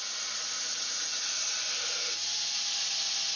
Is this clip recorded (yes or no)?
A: yes